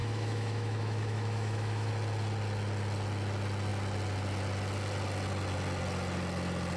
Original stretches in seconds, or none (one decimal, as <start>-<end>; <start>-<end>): 1.9-6.8